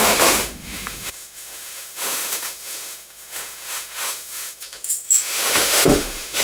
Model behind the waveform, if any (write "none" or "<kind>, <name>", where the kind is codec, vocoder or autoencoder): autoencoder, DAC-VAE